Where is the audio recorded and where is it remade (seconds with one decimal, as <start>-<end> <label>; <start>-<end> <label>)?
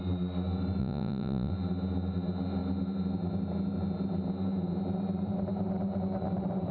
0.0-0.8 recorded; 0.8-1.5 remade; 1.5-6.7 recorded